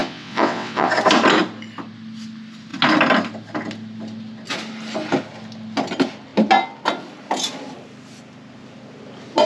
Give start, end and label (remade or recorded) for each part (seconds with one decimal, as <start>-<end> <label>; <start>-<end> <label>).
0.0-0.9 remade; 0.9-9.5 recorded